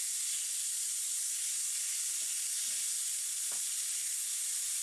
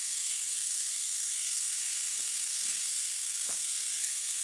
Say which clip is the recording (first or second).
first